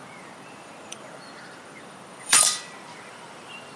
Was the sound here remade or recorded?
remade